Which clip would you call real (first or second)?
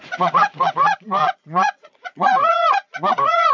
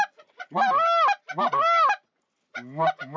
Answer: second